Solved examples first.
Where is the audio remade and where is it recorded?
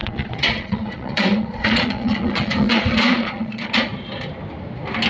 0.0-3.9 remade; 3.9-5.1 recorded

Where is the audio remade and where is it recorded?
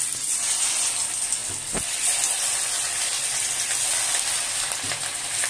0.0-5.5 recorded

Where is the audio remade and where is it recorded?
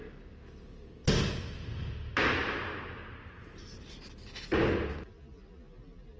0.0-6.2 recorded